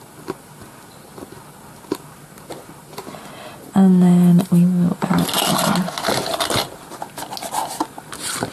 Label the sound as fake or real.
real